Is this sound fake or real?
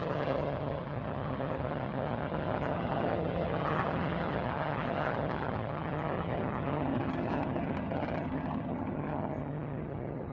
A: fake